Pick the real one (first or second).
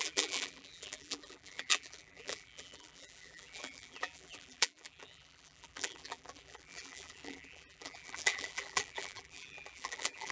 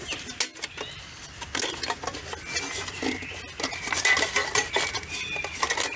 second